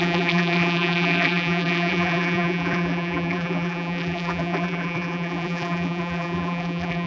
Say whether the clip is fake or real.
fake